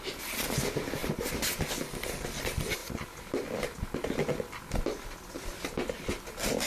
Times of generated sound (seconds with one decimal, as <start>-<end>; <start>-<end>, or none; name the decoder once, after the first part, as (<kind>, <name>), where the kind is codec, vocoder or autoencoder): none